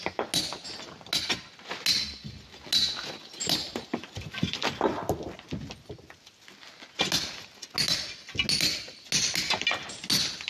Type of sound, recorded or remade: recorded